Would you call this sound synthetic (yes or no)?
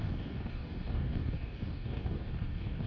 yes